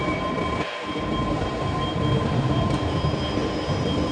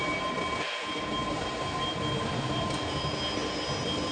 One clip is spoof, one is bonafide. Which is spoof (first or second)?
first